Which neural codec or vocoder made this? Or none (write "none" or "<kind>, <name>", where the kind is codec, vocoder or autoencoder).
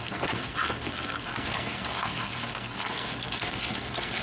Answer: codec, SNAC